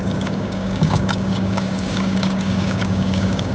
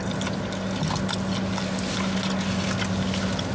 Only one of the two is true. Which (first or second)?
second